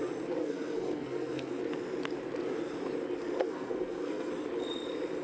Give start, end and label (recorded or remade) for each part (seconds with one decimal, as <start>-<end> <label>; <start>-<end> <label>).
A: 0.0-0.4 recorded; 0.4-1.6 remade; 1.6-3.4 recorded; 3.4-4.3 remade; 4.3-5.2 recorded